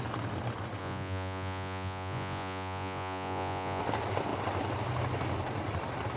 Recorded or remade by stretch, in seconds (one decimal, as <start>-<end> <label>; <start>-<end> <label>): 0.0-0.8 recorded; 0.8-3.8 remade; 3.8-6.2 recorded